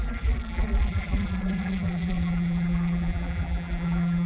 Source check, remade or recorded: remade